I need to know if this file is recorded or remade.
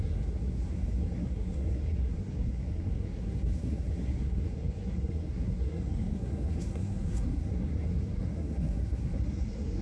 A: remade